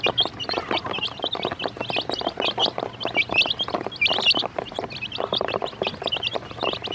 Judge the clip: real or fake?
fake